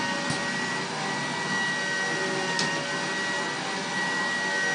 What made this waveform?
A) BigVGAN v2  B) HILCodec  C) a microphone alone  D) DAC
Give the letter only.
C